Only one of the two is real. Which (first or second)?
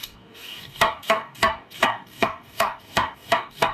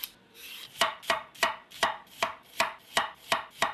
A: second